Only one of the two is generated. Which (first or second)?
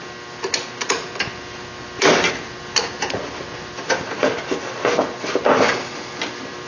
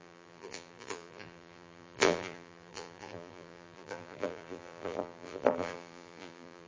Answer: second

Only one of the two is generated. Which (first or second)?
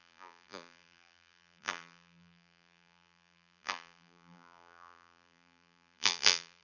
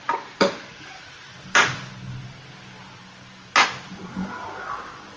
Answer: first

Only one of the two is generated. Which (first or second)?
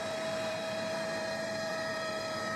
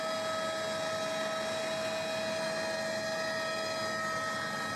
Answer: first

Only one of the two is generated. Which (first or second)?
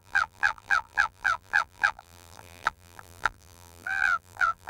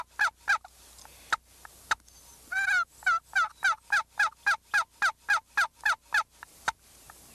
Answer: first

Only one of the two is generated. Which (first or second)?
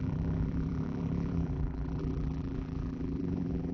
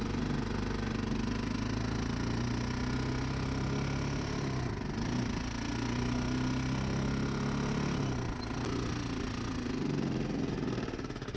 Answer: first